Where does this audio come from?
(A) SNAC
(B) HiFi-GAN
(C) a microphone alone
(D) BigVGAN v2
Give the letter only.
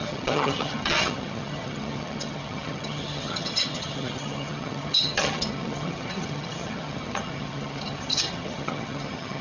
B